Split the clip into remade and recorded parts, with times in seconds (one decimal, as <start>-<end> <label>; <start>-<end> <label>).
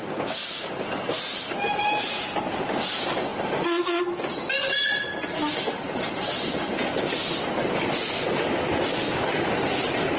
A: 0.0-10.2 recorded